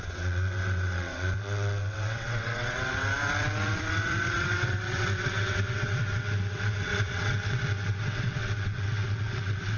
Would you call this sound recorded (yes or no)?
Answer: no